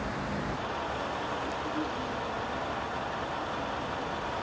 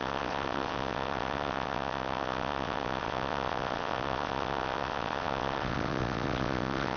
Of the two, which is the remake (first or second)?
second